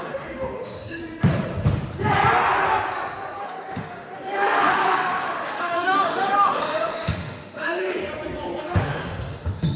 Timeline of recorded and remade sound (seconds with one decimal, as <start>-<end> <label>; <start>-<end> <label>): 0.0-1.0 remade; 1.0-3.4 recorded; 3.4-8.1 remade; 8.1-8.6 recorded; 8.6-9.8 remade